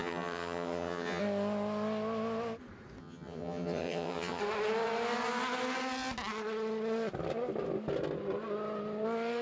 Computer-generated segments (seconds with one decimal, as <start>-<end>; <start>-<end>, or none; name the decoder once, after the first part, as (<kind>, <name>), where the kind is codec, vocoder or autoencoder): 0.0-1.2 (vocoder, HiFi-GAN); 3.0-4.4